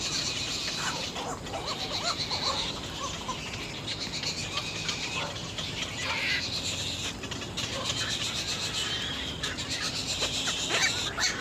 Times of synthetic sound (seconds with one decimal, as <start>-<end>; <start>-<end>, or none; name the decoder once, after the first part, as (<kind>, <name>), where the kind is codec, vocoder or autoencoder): none